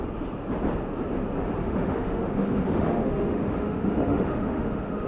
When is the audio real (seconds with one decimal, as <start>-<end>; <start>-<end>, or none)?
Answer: 0.0-1.6